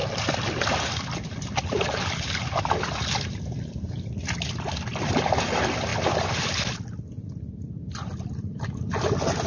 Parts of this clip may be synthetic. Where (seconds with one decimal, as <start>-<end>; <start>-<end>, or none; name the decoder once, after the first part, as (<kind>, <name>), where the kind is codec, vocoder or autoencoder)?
none